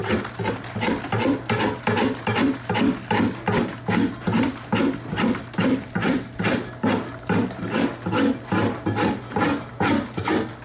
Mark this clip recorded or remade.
recorded